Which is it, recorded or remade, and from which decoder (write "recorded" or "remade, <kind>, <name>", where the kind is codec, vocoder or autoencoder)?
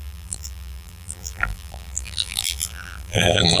remade, vocoder, BigVGAN v2